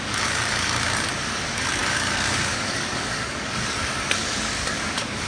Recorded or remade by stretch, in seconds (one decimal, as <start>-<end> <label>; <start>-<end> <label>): 0.0-5.3 remade